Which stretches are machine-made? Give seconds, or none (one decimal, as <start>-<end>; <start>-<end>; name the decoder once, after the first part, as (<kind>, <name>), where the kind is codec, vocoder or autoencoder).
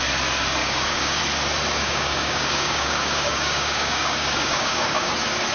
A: 0.6-1.2 (codec, DAC); 1.8-5.1